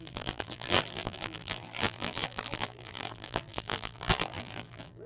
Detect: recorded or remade remade